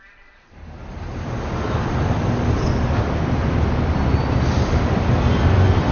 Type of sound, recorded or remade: recorded